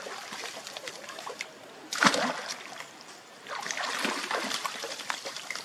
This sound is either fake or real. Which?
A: fake